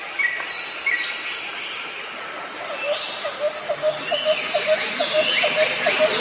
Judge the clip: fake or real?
real